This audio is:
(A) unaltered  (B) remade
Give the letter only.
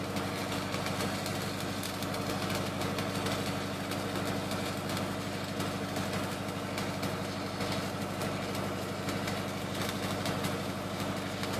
A